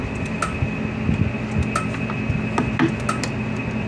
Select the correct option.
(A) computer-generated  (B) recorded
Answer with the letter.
B